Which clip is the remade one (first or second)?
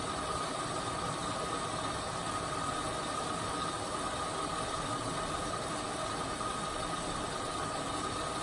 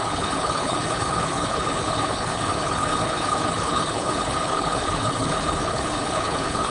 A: second